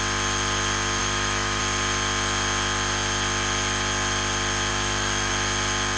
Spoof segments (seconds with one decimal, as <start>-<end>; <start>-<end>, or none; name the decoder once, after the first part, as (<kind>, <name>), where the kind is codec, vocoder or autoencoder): 1.0-1.6 (autoencoder, DAC-VAE); 4.7-5.3